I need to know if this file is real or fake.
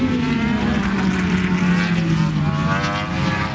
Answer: real